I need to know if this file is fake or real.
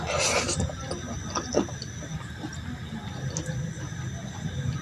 real